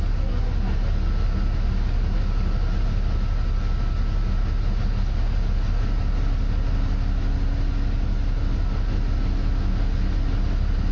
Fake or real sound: real